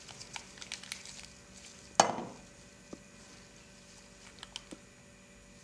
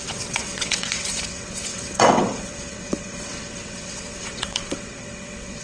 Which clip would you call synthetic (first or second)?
second